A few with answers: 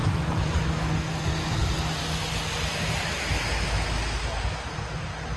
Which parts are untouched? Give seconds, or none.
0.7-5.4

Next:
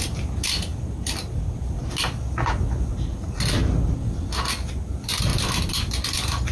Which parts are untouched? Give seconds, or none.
0.0-5.3; 5.9-6.5

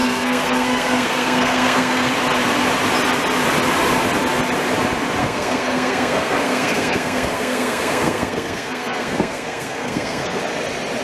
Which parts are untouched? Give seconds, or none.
2.1-5.2; 10.4-11.0

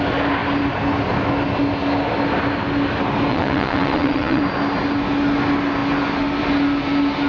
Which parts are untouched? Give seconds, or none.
0.0-3.3; 4.4-7.3

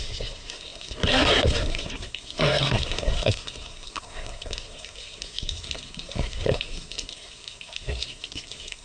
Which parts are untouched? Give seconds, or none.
none